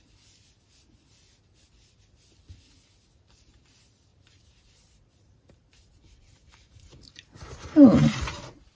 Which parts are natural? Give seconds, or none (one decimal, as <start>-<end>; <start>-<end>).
0.0-4.1; 8.2-8.7